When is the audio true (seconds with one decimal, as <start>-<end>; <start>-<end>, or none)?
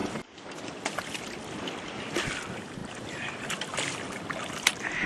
0.0-5.1